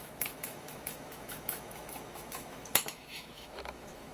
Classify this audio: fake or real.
fake